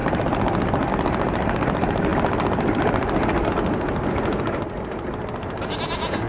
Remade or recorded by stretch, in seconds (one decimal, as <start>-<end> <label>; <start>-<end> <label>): 0.0-6.3 recorded